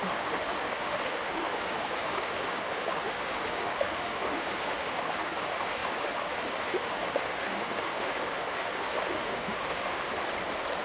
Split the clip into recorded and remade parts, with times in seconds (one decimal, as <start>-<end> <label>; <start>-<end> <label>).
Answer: 0.0-10.1 remade; 10.1-10.8 recorded